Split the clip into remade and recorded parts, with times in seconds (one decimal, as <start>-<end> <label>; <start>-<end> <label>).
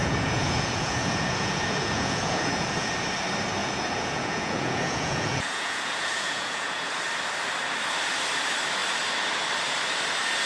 0.0-2.9 remade; 2.9-3.6 recorded; 3.6-6.9 remade; 6.9-10.5 recorded